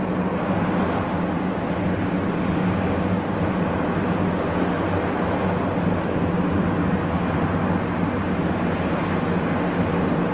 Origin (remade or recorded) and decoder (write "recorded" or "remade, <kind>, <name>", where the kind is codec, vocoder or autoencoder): recorded